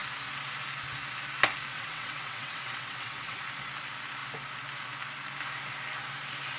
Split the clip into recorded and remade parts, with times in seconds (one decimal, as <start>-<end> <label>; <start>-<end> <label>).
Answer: 0.0-1.7 recorded; 1.7-3.4 remade; 3.4-6.6 recorded